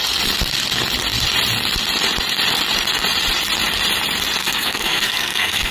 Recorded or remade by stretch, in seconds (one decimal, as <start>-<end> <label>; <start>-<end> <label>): 0.0-4.4 recorded; 4.4-5.7 remade